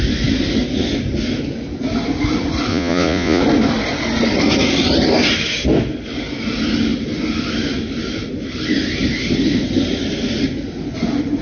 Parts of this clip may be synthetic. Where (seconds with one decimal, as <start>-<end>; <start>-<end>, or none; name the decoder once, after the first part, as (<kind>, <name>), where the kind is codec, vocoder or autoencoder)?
2.7-3.4 (vocoder, Vocos)